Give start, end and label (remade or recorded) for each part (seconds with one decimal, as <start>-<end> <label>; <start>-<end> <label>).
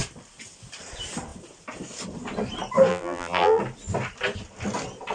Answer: 0.0-2.9 recorded; 2.9-3.6 remade; 3.6-5.1 recorded